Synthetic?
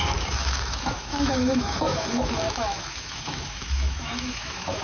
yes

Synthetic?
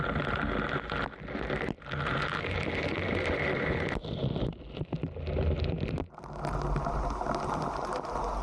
no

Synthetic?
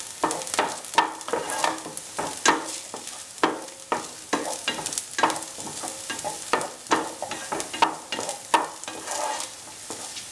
no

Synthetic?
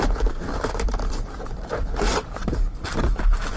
yes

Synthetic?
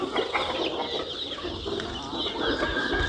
no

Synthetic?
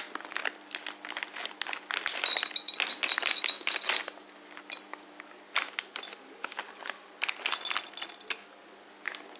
no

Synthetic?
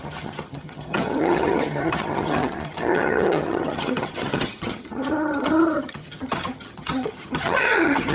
yes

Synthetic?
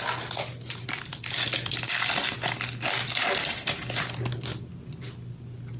no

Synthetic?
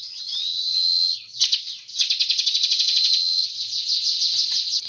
yes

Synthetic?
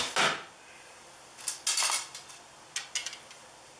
no